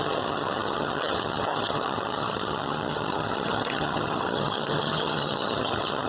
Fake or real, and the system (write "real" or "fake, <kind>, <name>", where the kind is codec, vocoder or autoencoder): fake, vocoder, HiFi-GAN